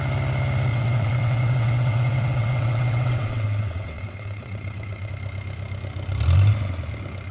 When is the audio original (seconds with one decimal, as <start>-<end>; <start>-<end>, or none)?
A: 0.0-0.7; 5.1-7.3